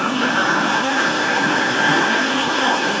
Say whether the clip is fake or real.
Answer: fake